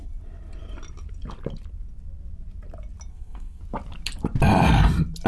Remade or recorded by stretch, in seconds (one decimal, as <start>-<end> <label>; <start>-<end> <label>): 0.0-3.1 recorded; 3.1-3.6 remade; 3.6-5.3 recorded